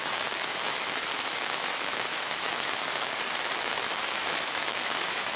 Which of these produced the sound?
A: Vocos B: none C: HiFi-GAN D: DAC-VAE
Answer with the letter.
D